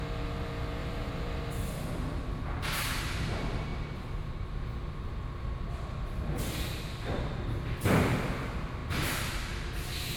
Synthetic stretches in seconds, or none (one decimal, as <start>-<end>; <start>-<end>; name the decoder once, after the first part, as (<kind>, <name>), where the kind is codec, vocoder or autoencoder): 0.8-1.5 (vocoder, BigVGAN v2)

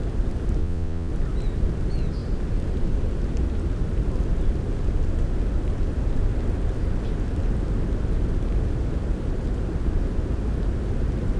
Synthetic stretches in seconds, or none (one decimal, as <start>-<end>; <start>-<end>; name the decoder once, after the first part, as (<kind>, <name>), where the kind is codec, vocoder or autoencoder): 0.6-1.1 (vocoder, Vocos)

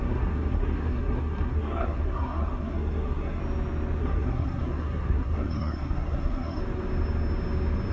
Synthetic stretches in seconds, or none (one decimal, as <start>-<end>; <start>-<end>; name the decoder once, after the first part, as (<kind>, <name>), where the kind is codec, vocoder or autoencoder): 0.0-3.4 (codec, SNAC); 4.0-6.6

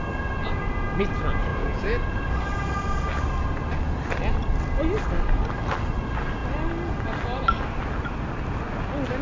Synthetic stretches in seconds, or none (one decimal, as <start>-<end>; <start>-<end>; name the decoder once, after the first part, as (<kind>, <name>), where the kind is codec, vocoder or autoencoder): 1.5-2.2 (vocoder, Vocos)